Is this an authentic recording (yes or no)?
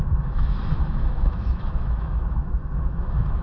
no